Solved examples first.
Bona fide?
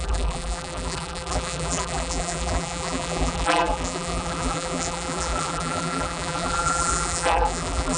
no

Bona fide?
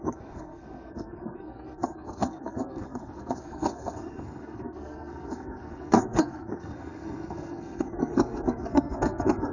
no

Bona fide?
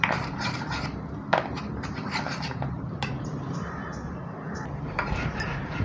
no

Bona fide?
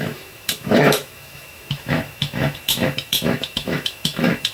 no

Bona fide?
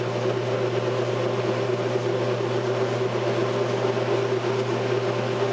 yes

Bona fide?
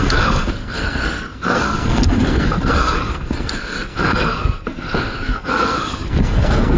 no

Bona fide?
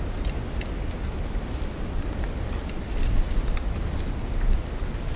yes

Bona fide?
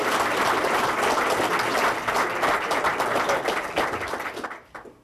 yes